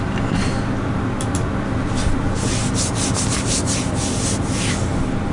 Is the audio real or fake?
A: real